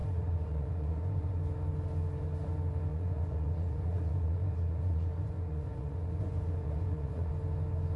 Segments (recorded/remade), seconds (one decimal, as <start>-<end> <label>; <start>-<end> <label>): 0.0-1.4 remade; 1.4-2.9 recorded; 2.9-7.3 remade; 7.3-8.0 recorded